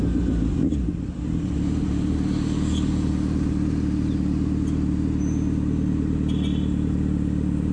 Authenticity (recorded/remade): recorded